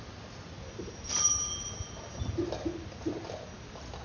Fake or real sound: real